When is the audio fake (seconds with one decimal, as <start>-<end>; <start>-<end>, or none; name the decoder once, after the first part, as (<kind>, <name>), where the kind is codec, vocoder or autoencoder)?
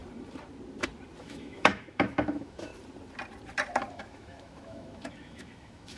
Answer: 1.2-2.7 (autoencoder, DAC-VAE); 3.9-6.0